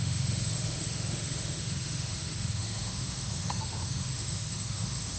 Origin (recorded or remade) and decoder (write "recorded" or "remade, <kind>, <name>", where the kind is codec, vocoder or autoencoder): remade, autoencoder, DAC-VAE